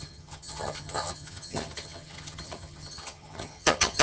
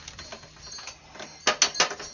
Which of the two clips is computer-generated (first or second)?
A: first